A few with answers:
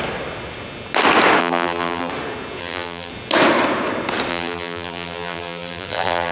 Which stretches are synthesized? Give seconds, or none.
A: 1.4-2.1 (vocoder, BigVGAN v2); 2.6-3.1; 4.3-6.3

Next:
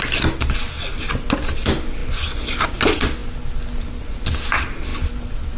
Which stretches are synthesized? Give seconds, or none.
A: none

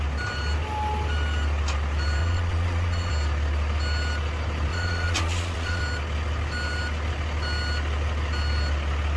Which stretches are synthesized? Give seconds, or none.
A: 2.2-3.1 (vocoder, Vocos); 4.7-5.8

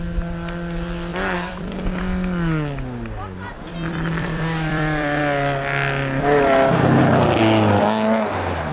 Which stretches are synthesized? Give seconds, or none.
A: 1.1-2.0 (vocoder, BigVGAN v2); 3.7-5.2

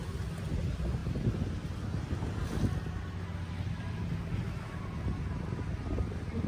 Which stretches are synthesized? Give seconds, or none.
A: none

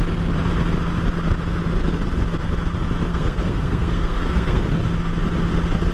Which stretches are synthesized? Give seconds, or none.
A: 3.1-4.6 (codec, SNAC)

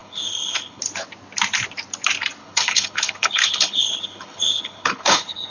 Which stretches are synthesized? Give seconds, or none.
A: 0.0-0.8 (codec, HILCodec); 2.4-5.5

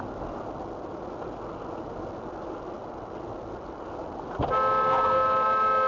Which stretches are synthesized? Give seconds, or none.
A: none